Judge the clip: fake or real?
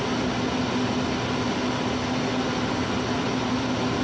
real